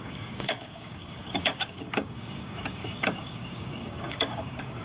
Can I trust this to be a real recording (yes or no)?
no